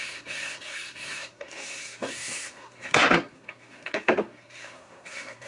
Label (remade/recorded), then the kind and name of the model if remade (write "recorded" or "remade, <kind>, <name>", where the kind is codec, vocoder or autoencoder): remade, codec, SNAC